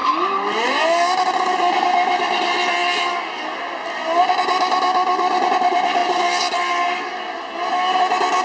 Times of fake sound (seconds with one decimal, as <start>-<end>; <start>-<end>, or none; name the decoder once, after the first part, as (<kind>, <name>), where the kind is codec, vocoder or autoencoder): none